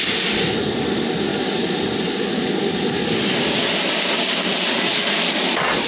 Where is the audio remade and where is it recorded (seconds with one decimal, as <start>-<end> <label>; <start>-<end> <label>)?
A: 0.0-2.7 recorded; 2.7-4.1 remade; 4.1-5.9 recorded